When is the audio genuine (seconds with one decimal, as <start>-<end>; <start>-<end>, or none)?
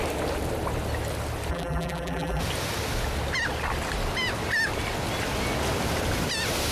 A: 0.0-1.5; 2.4-6.7